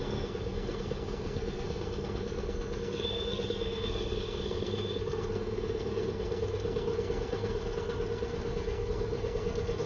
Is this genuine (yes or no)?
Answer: no